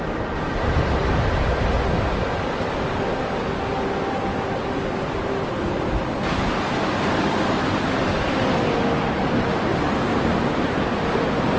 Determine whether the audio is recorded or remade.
recorded